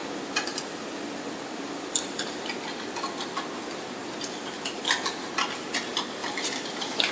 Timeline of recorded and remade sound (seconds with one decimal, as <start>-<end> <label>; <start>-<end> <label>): 0.0-2.5 remade; 2.5-4.0 recorded; 4.0-4.8 remade; 4.8-7.1 recorded